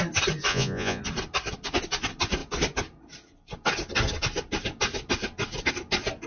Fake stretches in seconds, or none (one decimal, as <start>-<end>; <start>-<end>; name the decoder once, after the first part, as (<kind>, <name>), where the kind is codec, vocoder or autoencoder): 0.5-1.0 (vocoder, Vocos)